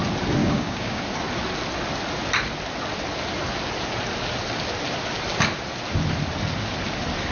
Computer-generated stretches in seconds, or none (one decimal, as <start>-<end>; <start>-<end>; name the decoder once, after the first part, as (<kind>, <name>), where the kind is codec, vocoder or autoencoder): 0.4-1.0 (codec, DAC)